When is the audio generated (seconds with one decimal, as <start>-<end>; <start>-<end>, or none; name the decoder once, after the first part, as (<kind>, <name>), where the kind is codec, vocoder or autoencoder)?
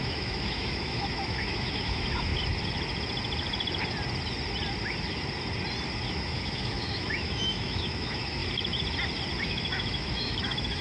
0.0-2.3 (autoencoder, DAC-VAE); 6.1-8.4; 9.4-10.8